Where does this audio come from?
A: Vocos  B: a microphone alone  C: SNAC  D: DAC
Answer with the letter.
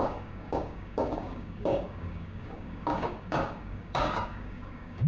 D